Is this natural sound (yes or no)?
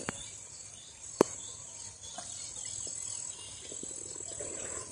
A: yes